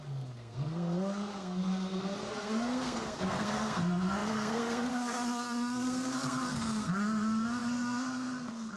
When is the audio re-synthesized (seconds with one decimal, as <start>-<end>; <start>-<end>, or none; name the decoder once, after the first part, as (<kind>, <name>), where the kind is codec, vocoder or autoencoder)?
0.0-8.8 (codec, SNAC)